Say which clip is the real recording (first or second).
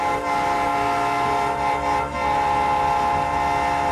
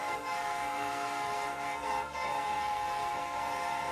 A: first